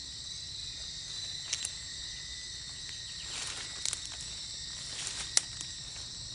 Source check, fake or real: real